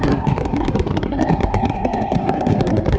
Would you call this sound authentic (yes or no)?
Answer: no